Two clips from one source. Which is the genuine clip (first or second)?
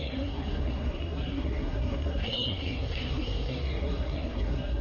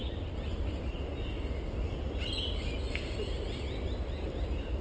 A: second